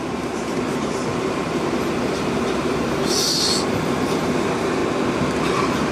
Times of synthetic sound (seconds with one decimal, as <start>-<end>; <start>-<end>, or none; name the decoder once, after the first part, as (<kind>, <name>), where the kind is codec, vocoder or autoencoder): 0.0-4.8 (vocoder, BigVGAN v2); 5.4-5.9